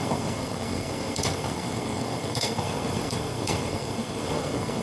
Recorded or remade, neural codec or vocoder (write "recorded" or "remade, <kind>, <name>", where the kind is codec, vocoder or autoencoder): remade, codec, SNAC